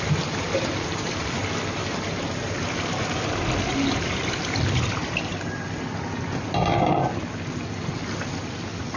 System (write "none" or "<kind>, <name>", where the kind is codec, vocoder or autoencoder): none